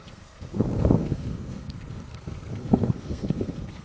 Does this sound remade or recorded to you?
remade